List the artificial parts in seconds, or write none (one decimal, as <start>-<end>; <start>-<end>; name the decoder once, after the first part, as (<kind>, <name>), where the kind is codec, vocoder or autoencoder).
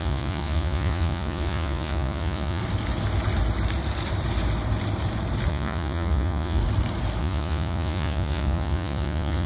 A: 0.0-2.6 (vocoder, Vocos); 5.5-6.6; 7.2-9.5